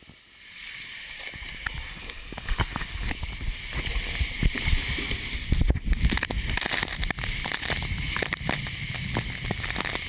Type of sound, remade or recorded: recorded